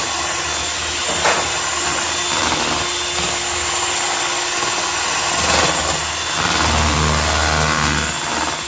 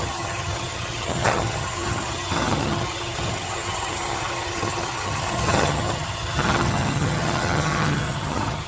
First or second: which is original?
first